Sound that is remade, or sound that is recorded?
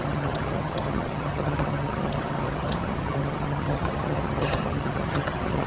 remade